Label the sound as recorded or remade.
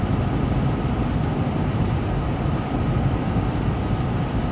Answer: recorded